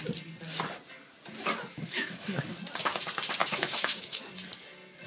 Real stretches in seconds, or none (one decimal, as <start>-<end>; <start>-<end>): 0.0-1.7; 2.3-3.4; 4.2-5.1